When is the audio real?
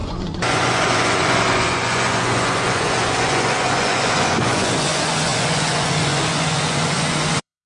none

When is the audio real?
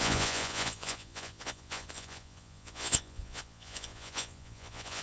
none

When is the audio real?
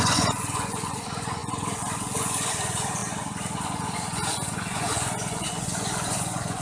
none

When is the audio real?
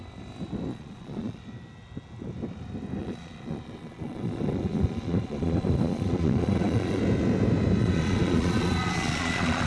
0.0-0.7; 1.4-3.0; 7.0-7.8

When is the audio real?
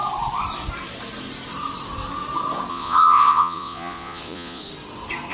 0.0-2.7; 4.6-5.3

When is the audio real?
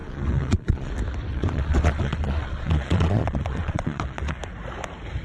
0.9-1.3; 4.4-5.2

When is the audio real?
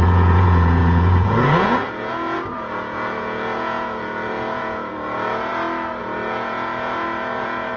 5.5-6.0